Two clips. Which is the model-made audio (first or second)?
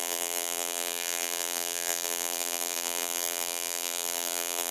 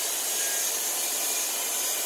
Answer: first